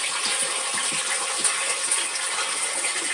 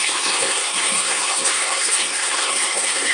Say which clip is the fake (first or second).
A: second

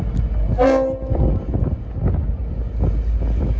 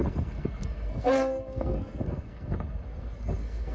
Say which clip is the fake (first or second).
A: second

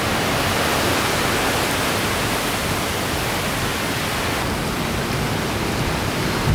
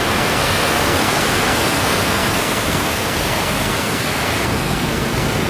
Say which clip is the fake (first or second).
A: second